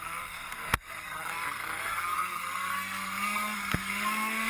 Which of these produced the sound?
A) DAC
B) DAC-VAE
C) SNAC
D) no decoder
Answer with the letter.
C